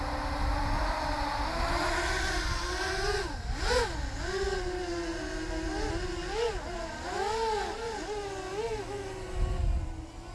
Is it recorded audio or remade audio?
recorded